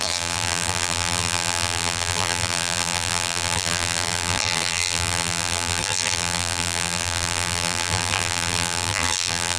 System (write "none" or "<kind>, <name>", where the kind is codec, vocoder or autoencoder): vocoder, BigVGAN v2